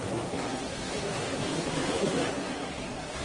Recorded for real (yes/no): no